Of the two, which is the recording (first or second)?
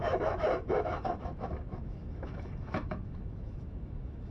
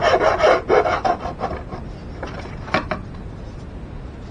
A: second